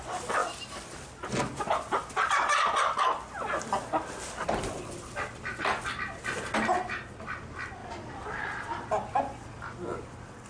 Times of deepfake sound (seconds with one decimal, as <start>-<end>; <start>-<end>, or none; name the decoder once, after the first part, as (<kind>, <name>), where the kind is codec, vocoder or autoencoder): none